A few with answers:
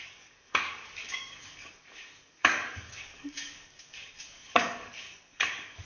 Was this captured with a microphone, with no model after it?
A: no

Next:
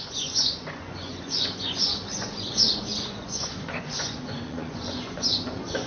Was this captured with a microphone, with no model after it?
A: no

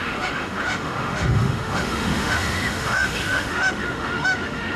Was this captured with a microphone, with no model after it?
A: no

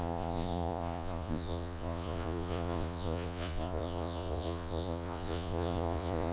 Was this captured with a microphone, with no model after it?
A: no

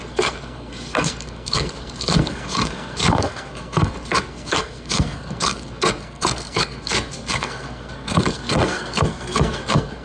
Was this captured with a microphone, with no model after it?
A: no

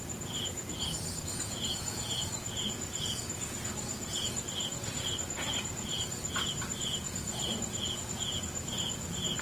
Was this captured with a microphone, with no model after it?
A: no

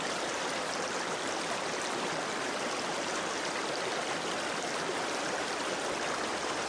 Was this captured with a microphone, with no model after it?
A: yes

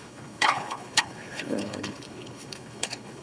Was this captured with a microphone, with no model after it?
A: no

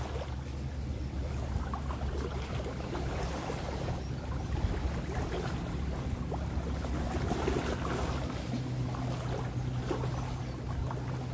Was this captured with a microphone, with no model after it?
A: yes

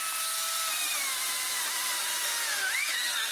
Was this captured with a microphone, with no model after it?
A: yes